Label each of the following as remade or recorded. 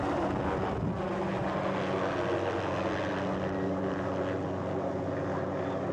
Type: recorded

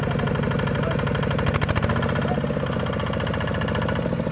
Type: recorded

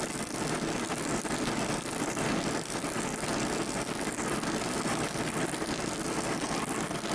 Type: recorded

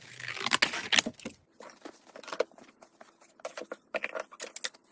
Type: recorded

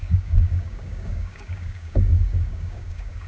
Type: remade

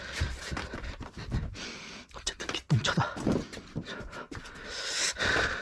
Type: recorded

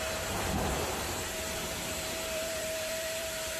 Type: remade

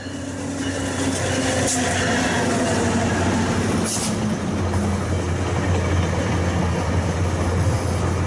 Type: recorded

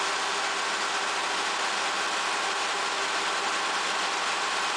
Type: recorded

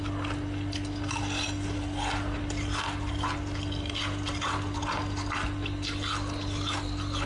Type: recorded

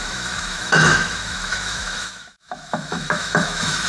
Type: remade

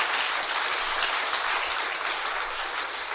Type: recorded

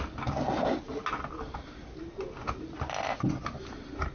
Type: recorded